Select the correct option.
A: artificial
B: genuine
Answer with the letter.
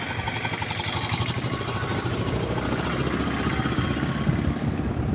B